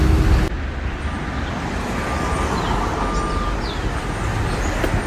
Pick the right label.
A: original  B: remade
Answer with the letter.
A